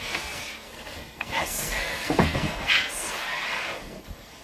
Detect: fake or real fake